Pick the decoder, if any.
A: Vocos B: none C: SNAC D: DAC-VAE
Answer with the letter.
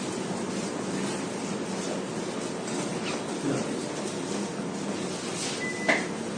B